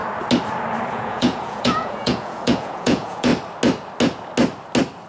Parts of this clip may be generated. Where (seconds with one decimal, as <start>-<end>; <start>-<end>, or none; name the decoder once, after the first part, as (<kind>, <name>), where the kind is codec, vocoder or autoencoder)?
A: 0.9-3.3 (vocoder, Vocos)